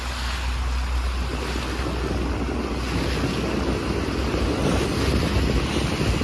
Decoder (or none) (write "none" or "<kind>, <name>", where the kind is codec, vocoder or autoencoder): none